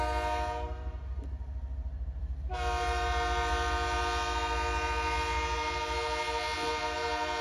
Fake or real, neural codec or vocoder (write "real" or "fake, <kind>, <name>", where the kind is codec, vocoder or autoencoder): real